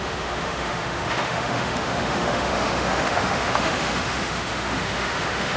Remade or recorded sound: remade